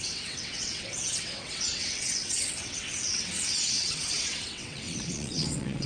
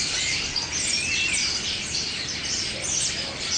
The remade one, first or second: first